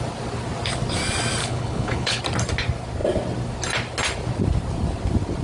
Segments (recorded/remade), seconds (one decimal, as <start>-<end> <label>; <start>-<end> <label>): 0.0-1.4 recorded; 1.4-2.2 remade; 2.2-5.4 recorded